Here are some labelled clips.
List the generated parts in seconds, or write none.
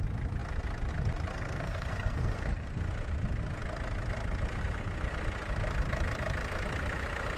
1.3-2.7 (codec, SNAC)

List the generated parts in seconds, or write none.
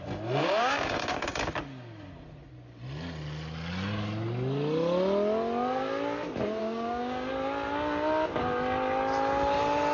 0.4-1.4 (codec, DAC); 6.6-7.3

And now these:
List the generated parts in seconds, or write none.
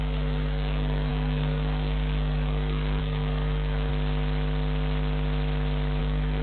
0.0-3.9 (codec, SNAC); 6.0-6.4